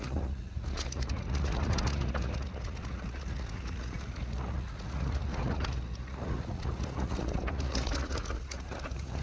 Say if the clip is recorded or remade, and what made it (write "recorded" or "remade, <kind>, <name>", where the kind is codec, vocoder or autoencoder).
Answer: remade, vocoder, Vocos